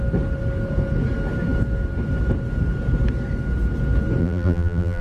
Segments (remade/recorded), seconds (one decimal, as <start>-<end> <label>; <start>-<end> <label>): 0.0-4.2 recorded; 4.2-5.0 remade